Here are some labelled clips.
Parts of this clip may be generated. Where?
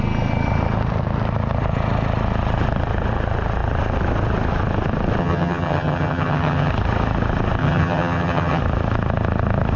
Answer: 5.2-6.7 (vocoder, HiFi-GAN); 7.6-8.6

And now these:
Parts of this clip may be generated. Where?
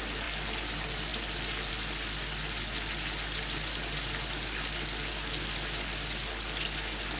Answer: none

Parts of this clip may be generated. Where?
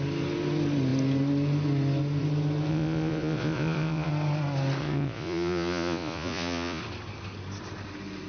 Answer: 2.7-4.1 (vocoder, Vocos); 4.8-6.8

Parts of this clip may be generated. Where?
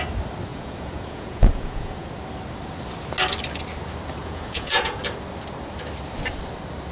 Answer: 0.5-2.1 (vocoder, Vocos); 4.2-5.0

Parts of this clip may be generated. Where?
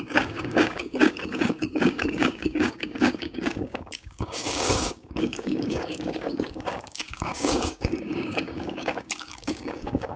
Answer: 0.0-10.2 (codec, DAC)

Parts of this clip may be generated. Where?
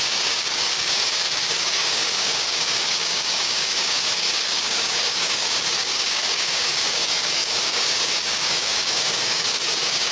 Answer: 0.0-10.1 (codec, DAC)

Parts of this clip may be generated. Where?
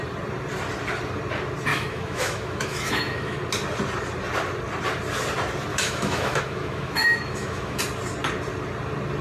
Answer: 1.7-3.4 (autoencoder, DAC-VAE); 5.7-7.8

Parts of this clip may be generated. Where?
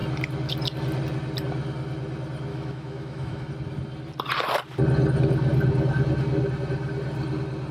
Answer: 2.5-3.5 (autoencoder, DAC-VAE)